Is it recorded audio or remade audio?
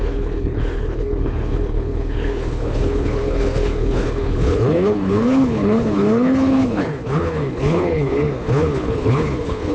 remade